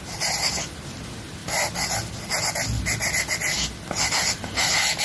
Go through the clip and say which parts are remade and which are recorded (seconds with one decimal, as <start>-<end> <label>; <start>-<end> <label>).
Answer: 0.0-5.0 recorded